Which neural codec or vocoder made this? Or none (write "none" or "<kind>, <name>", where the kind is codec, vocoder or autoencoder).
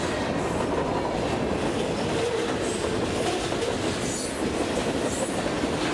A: none